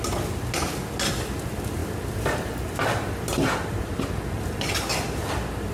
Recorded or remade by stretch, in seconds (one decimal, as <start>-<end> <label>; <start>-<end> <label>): 0.0-5.7 recorded